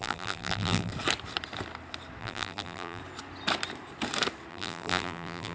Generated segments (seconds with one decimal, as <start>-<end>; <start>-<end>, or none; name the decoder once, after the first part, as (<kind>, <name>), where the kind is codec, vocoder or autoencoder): 0.0-0.9 (vocoder, BigVGAN v2); 2.2-3.0; 4.5-5.5